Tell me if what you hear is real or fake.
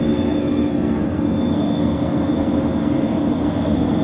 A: fake